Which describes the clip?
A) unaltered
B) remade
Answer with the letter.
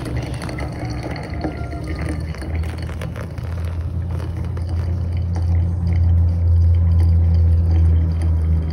A